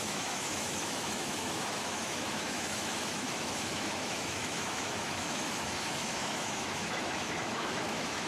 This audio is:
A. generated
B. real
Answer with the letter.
A